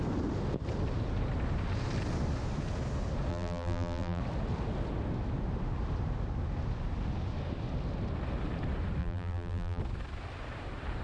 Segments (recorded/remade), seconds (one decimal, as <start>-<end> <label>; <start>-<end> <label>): 0.0-3.3 recorded; 3.3-4.2 remade; 4.2-9.0 recorded; 9.0-9.8 remade; 9.8-11.0 recorded